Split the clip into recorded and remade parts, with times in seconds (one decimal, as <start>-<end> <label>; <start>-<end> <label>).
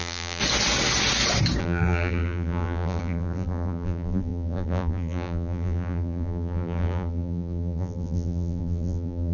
0.0-0.4 remade; 0.4-1.6 recorded; 1.6-9.3 remade